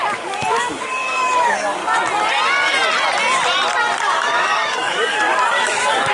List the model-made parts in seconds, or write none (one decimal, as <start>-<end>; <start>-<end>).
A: 0.0-1.8; 4.0-6.1